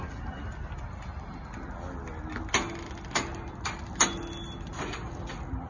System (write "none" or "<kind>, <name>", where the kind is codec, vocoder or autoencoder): none